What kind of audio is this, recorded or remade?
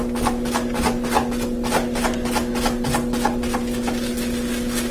recorded